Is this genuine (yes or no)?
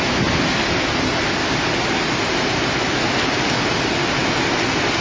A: yes